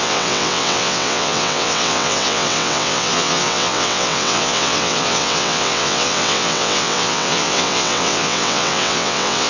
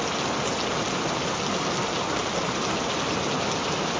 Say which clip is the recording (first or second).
second